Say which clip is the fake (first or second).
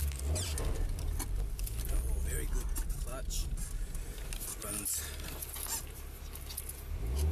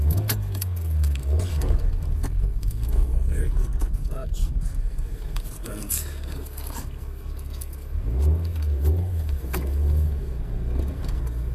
second